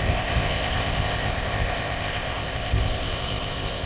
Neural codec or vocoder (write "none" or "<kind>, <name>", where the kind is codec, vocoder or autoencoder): codec, ZipCodec